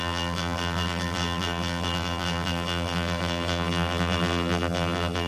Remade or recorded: remade